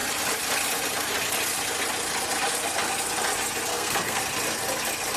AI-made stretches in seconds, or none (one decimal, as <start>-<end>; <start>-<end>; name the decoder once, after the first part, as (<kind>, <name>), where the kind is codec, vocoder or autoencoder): 3.7-4.2 (codec, SNAC)